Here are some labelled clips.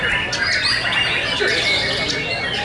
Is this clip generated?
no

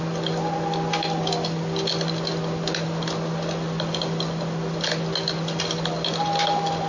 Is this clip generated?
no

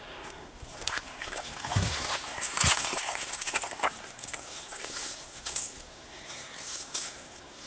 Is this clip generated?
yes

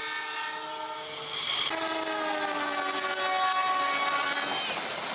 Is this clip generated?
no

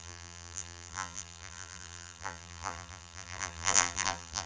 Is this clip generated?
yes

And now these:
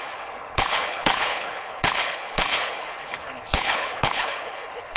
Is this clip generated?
yes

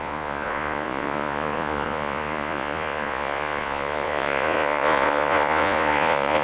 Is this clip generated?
yes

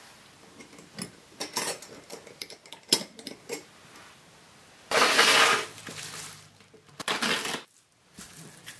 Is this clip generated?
no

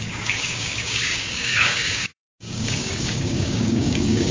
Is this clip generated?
yes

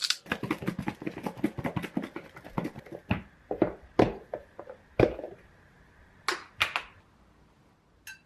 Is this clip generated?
no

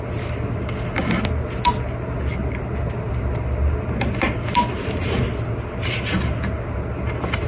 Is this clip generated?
no